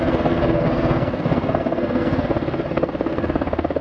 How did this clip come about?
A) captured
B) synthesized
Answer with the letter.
B